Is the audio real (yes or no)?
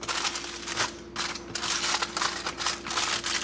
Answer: yes